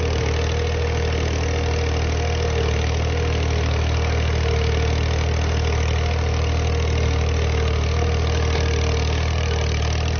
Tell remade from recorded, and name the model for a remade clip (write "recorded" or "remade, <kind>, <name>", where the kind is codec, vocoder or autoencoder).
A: recorded